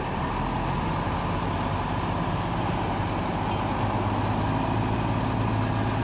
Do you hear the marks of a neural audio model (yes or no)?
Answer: no